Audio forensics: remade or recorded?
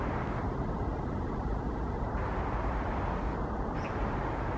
recorded